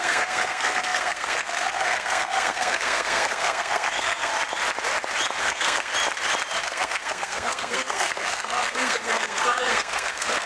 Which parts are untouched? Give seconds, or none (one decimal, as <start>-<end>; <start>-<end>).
4.3-5.4; 5.9-6.6